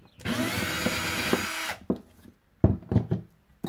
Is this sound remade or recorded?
recorded